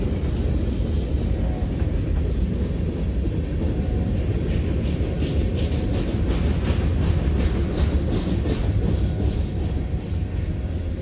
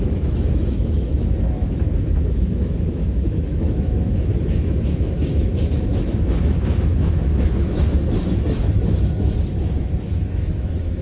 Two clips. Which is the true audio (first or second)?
first